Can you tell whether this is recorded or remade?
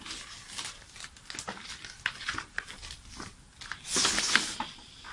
recorded